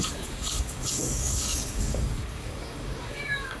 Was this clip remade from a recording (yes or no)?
yes